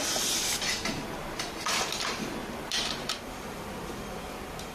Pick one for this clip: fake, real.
real